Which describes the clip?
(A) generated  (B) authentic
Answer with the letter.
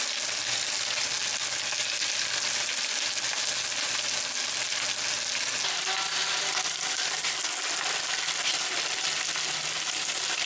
B